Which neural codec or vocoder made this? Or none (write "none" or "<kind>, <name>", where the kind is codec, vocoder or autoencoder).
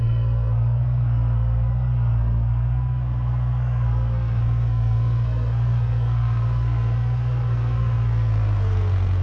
codec, SNAC